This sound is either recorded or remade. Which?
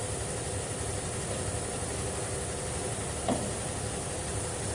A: recorded